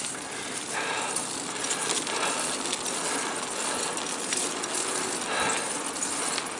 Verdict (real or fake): real